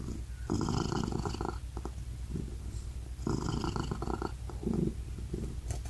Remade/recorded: recorded